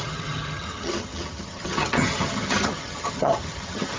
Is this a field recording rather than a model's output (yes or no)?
no